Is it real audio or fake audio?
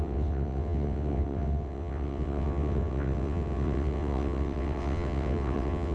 fake